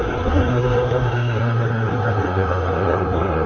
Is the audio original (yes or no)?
no